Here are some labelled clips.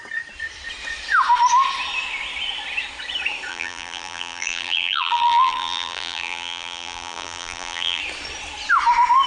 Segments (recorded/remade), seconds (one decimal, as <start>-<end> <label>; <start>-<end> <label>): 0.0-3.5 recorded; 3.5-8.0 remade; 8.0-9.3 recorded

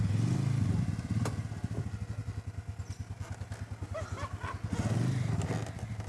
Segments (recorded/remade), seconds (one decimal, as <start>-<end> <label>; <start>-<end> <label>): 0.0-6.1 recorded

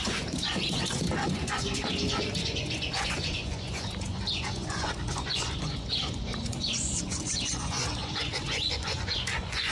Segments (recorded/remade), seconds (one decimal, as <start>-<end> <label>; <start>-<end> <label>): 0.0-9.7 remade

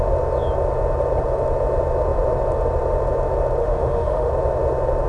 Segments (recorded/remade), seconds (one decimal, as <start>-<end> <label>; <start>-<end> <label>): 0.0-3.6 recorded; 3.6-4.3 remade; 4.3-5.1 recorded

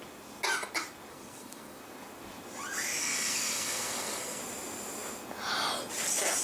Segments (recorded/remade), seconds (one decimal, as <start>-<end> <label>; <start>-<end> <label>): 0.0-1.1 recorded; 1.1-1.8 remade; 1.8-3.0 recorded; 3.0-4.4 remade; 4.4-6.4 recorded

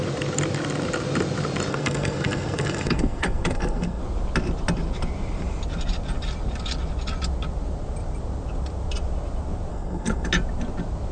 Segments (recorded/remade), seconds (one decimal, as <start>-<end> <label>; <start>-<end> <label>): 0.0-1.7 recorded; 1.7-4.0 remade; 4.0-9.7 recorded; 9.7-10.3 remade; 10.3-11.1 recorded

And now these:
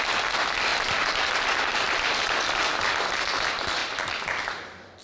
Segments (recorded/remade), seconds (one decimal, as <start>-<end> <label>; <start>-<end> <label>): 0.0-3.8 recorded; 3.8-4.4 remade; 4.4-5.0 recorded

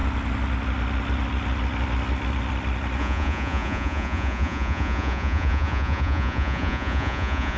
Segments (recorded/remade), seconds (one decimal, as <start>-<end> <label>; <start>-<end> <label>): 0.0-3.0 recorded; 3.0-7.6 remade